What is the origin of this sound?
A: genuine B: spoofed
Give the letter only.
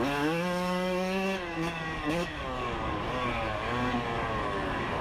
B